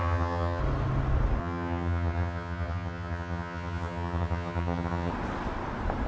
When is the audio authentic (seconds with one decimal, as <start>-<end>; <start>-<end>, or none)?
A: 0.6-1.4; 5.1-6.1